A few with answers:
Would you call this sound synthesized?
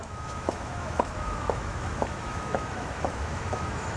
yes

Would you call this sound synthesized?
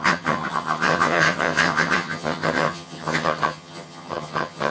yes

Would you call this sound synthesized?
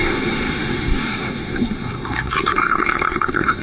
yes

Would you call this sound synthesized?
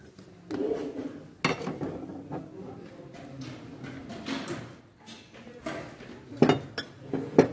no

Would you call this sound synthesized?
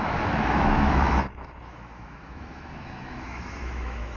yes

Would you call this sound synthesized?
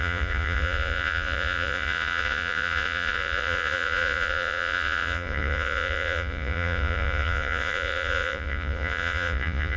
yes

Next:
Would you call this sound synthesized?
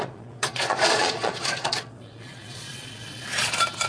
yes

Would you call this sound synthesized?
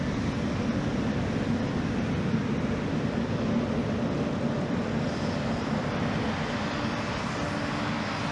no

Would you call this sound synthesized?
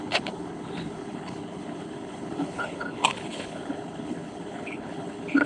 yes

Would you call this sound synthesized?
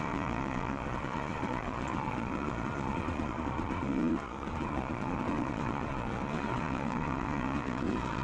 yes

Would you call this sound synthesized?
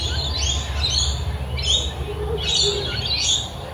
no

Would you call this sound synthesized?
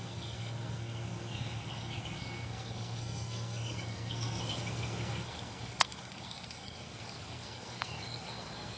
yes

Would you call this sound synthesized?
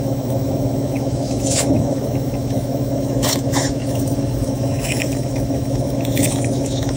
yes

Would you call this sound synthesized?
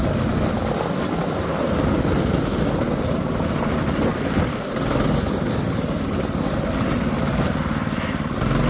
no